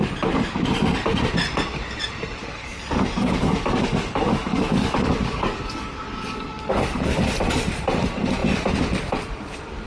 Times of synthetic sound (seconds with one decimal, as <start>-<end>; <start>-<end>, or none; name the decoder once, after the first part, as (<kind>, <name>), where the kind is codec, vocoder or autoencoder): 2.4-7.2 (codec, DAC)